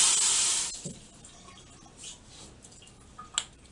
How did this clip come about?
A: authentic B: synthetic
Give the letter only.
A